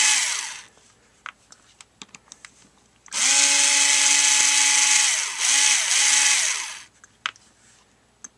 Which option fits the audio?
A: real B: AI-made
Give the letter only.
A